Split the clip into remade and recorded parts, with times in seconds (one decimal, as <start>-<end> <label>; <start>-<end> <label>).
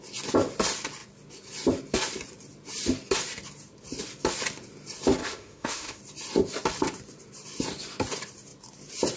0.0-5.2 recorded; 5.2-6.0 remade; 6.0-9.2 recorded